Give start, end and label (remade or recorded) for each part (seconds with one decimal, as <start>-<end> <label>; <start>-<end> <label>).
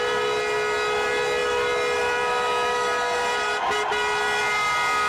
0.0-5.1 recorded